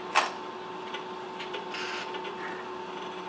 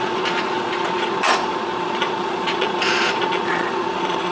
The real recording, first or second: first